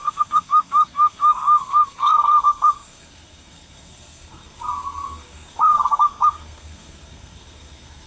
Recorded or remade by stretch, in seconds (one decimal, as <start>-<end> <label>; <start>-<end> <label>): 0.0-8.1 remade